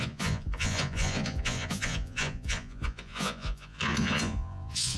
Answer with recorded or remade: remade